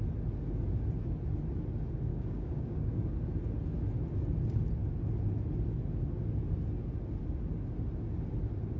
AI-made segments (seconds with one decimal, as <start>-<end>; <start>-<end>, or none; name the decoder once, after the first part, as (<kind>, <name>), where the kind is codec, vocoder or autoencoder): 2.1-3.1 (codec, DAC)